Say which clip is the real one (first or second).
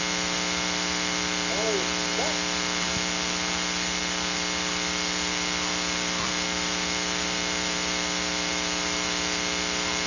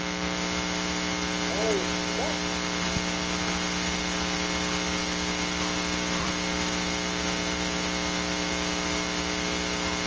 second